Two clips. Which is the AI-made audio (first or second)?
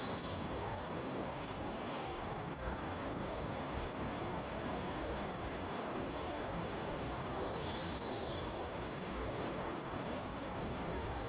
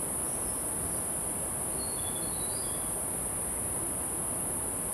first